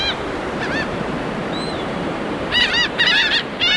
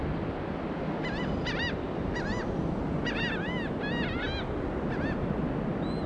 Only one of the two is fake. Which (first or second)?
first